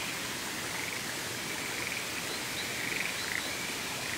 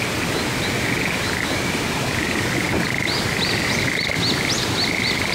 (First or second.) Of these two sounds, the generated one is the second